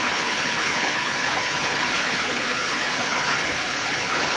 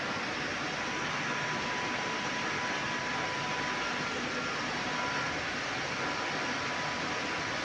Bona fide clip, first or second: second